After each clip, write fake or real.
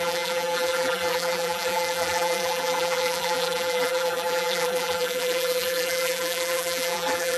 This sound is fake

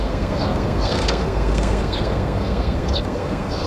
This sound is fake